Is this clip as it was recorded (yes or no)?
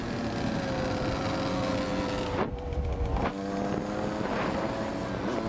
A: yes